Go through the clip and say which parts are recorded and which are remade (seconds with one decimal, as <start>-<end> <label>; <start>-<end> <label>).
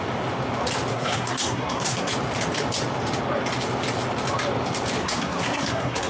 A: 0.0-0.9 recorded; 0.9-2.1 remade; 2.1-5.0 recorded; 5.0-6.1 remade